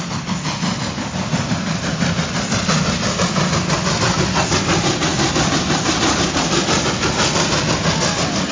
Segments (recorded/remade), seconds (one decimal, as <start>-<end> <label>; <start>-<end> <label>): 0.0-8.5 recorded